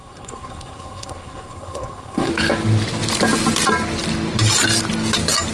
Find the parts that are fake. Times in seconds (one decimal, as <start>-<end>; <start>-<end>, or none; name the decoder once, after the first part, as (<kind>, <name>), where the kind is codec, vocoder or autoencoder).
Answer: 0.0-2.3 (codec, SNAC)